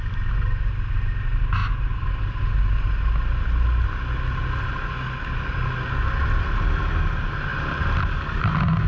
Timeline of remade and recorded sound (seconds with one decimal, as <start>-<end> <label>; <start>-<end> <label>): 0.0-8.9 recorded